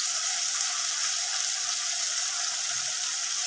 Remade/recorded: recorded